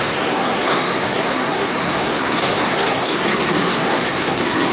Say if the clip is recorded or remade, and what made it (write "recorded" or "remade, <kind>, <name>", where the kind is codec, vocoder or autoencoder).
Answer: remade, codec, SNAC